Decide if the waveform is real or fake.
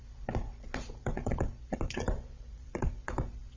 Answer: fake